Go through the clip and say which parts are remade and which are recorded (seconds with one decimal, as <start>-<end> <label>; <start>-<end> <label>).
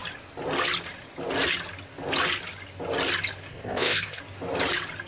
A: 0.0-3.5 recorded; 3.5-4.2 remade; 4.2-5.1 recorded